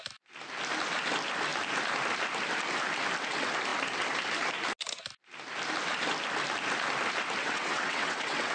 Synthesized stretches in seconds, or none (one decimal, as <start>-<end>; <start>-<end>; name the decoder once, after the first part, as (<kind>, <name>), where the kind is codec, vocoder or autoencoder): 7.4-8.5 (vocoder, WaveNeXt)